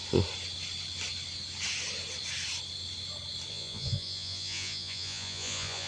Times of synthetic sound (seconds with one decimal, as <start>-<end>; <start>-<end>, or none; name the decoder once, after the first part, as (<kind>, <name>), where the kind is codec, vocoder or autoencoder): 3.5-5.9 (vocoder, Vocos)